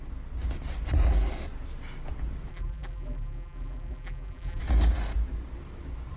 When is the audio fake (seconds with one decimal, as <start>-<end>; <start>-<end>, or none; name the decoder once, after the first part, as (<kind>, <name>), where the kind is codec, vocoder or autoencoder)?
2.5-4.6 (vocoder, BigVGAN v2)